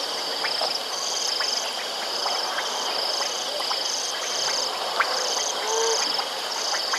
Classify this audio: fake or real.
real